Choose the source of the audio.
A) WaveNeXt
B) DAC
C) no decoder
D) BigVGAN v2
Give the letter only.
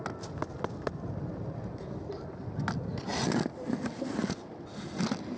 C